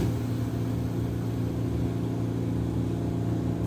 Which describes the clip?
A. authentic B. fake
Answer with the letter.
A